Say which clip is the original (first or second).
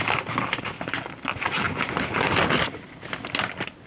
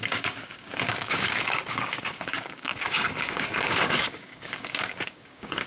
first